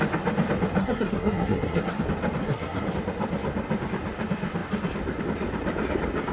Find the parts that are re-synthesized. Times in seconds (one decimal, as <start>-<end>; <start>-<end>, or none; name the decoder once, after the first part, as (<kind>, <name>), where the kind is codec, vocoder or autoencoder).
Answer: 0.8-2.0 (codec, SNAC); 2.4-2.9